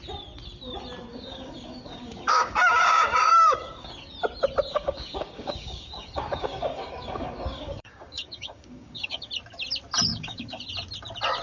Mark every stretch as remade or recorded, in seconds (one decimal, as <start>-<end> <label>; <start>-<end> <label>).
0.0-1.1 recorded; 1.1-4.1 remade; 4.1-4.7 recorded; 4.7-9.3 remade; 9.3-10.1 recorded; 10.1-10.6 remade; 10.6-11.4 recorded